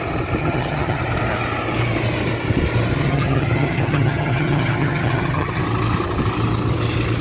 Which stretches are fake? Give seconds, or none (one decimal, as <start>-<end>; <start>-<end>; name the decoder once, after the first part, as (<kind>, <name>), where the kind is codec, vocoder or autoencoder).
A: 0.4-1.0 (vocoder, HiFi-GAN); 3.0-5.6